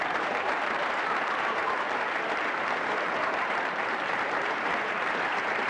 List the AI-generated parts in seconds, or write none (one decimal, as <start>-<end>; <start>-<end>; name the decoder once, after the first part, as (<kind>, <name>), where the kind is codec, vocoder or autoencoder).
0.0-1.6 (vocoder, BigVGAN v2); 2.2-5.7